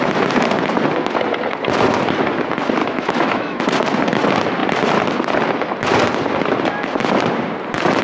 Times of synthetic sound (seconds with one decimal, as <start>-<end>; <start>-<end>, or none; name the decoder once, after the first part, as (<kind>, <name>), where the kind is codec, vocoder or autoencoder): 2.8-3.6 (autoencoder, DAC-VAE)